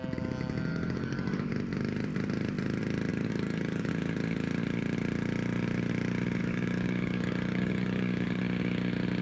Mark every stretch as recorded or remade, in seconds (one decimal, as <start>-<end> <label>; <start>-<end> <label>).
0.0-0.7 recorded; 0.7-1.5 remade; 1.5-3.1 recorded; 3.1-3.9 remade; 3.9-6.4 recorded; 6.4-8.4 remade; 8.4-9.2 recorded